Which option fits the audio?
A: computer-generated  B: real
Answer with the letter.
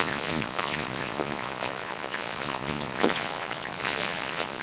A